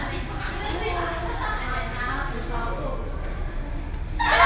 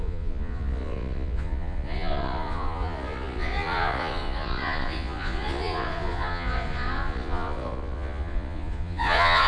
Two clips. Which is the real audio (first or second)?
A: first